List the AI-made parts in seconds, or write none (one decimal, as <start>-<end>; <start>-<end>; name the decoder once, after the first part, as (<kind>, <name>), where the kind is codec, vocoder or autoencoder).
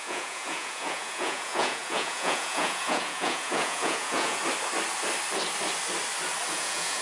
0.0-4.4 (vocoder, Vocos); 6.5-7.0